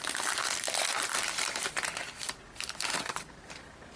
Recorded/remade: recorded